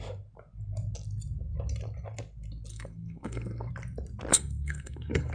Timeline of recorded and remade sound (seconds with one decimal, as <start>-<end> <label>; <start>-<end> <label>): 0.0-2.7 recorded; 2.7-3.7 remade; 3.7-4.3 recorded; 4.3-5.3 remade